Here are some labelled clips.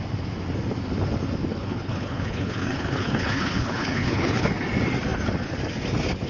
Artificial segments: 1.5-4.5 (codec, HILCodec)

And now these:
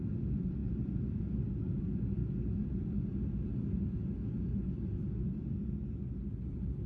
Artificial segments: none

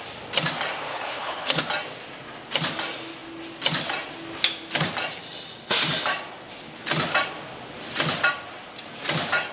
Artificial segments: 0.9-1.6 (codec, HILCodec)

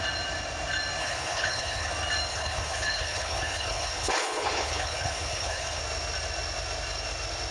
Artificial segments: 1.0-1.9 (codec, HILCodec); 2.3-5.8

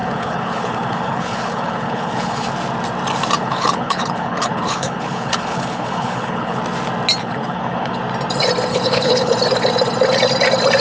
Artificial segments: 0.0-2.5 (codec, HILCodec); 3.4-6.6; 7.2-8.0; 8.7-9.3

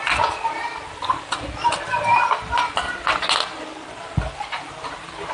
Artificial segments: none